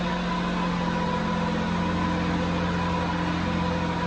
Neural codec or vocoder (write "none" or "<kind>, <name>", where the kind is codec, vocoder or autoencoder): none